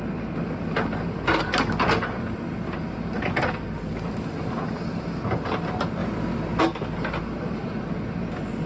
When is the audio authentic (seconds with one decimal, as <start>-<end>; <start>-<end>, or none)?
0.0-8.7